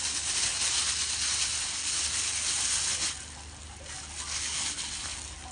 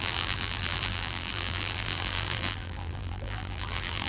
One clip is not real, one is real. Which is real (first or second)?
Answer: first